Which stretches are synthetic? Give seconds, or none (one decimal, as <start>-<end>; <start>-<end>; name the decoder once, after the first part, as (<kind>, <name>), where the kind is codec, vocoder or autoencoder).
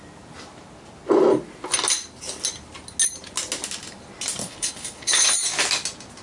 4.4-5.3 (codec, HILCodec)